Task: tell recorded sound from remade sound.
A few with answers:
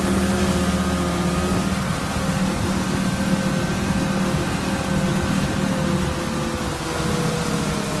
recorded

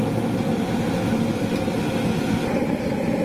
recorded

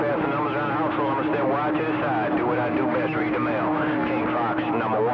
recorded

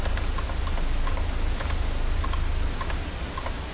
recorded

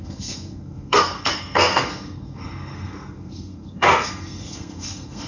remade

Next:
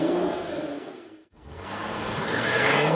remade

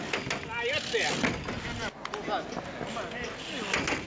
recorded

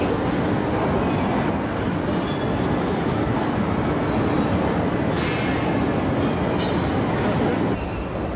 recorded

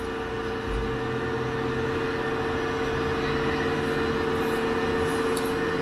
recorded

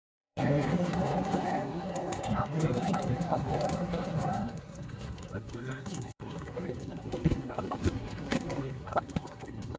remade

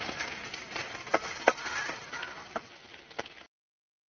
recorded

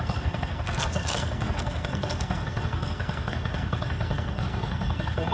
remade